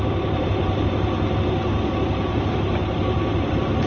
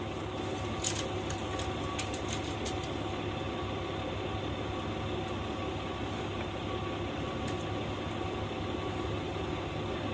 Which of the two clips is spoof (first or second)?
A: first